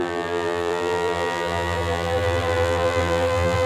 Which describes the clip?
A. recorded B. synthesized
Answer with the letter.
B